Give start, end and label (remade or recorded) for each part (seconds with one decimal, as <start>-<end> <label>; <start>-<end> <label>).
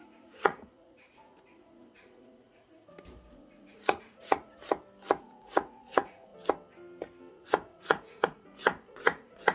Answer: 0.0-4.6 remade; 4.6-5.2 recorded; 5.2-6.3 remade; 6.3-7.3 recorded; 7.3-9.5 remade